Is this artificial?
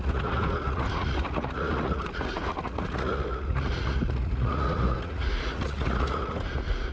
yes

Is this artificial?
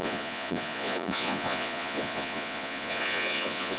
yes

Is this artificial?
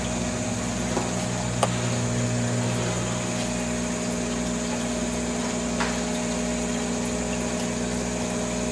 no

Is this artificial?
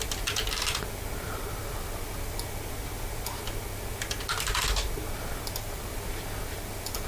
no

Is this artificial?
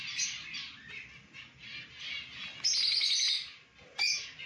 no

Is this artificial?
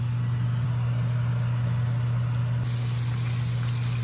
no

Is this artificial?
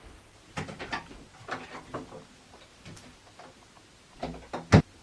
no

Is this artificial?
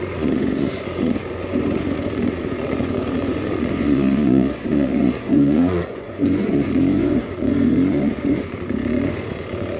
yes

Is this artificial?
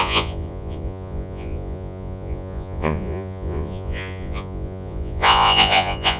yes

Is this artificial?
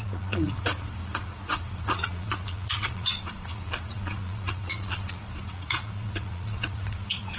yes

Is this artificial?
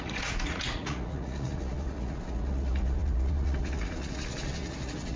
yes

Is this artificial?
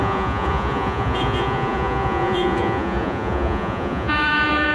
yes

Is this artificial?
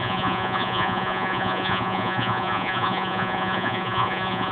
yes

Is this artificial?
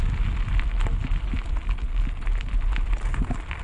no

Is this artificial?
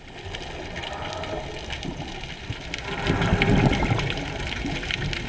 no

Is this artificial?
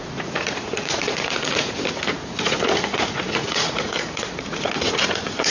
yes